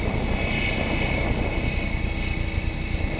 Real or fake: real